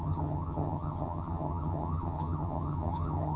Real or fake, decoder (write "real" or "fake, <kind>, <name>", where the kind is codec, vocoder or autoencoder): fake, vocoder, HiFi-GAN